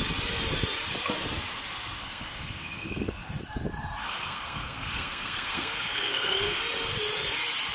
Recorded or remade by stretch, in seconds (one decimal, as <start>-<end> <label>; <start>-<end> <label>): 0.0-2.0 recorded; 2.0-3.4 remade; 3.4-4.0 recorded; 4.0-6.6 remade; 6.6-7.7 recorded